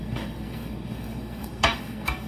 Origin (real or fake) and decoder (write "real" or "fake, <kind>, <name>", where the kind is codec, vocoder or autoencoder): fake, codec, SNAC